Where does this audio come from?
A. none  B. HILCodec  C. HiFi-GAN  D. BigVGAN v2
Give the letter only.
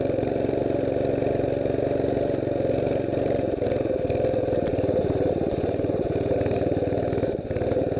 A